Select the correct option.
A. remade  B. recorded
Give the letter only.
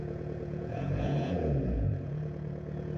A